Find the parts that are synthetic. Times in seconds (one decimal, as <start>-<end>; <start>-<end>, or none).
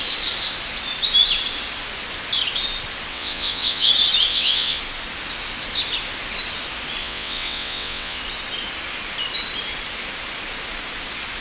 3.1-3.9; 4.3-4.8; 7.0-8.2